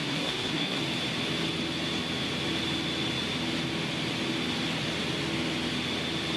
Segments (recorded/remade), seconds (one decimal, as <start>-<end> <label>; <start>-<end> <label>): 0.0-0.8 remade; 0.8-6.4 recorded